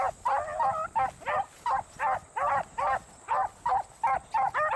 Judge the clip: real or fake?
real